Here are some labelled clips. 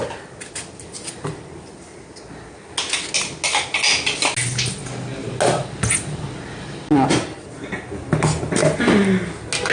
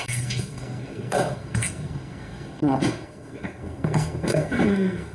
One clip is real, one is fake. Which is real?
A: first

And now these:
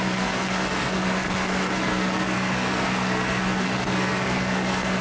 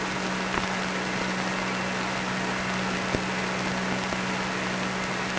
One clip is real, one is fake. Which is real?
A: second